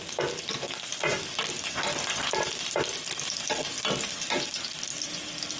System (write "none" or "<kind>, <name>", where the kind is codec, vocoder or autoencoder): none